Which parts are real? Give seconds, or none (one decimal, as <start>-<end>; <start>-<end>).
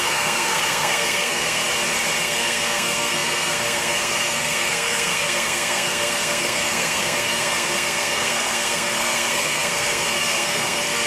1.6-2.2